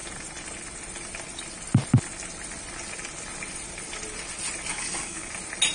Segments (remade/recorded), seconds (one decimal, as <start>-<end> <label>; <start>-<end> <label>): 0.0-4.7 recorded; 4.7-5.3 remade; 5.3-5.7 recorded